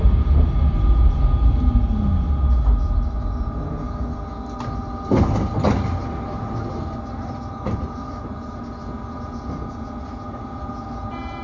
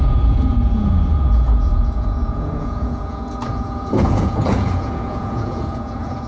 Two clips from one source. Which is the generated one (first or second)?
second